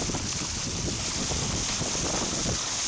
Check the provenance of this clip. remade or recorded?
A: recorded